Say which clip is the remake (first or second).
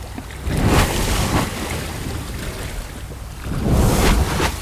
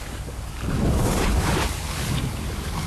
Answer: second